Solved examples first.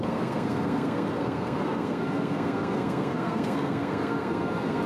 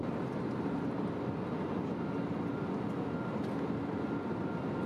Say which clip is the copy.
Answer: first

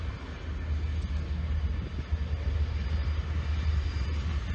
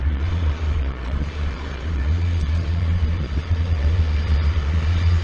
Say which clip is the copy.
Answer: second